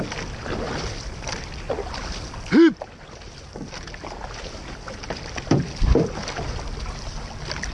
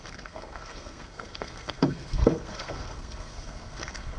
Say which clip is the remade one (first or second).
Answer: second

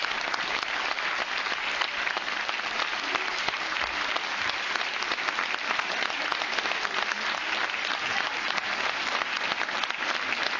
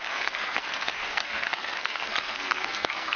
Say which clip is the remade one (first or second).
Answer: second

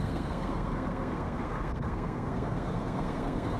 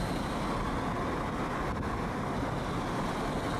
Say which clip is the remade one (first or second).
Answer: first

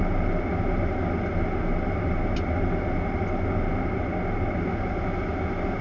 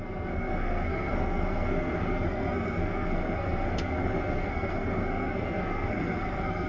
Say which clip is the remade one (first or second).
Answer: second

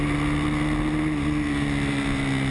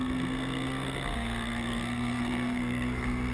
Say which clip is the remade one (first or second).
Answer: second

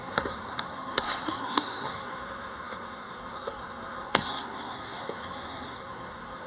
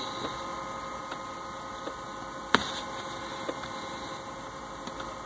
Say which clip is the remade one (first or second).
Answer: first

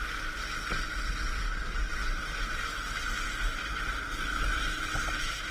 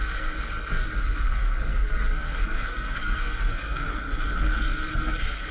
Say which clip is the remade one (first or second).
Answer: second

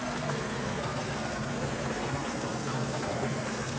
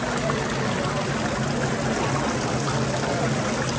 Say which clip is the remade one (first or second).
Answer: first